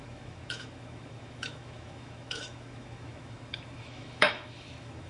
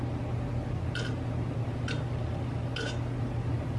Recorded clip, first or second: second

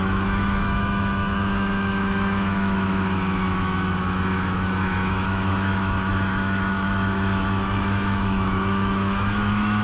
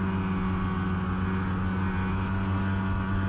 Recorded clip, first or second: second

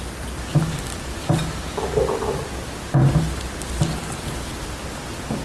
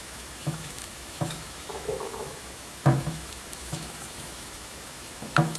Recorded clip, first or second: first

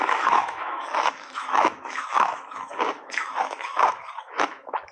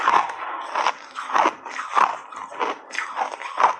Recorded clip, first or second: second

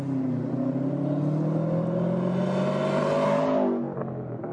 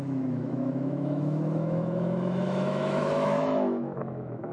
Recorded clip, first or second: first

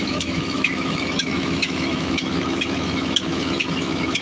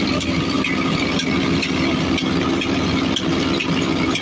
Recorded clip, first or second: second